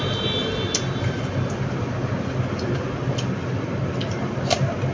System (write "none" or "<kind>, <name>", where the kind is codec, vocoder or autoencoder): none